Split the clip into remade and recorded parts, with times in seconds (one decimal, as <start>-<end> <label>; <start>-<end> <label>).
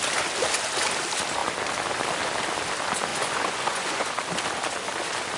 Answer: 0.0-3.1 recorded; 3.1-4.2 remade; 4.2-5.4 recorded